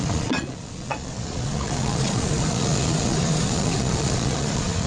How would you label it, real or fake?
fake